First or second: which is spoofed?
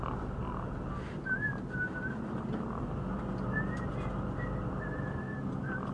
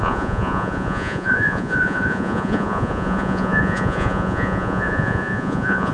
second